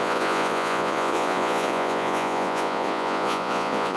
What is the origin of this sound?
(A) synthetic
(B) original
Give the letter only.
A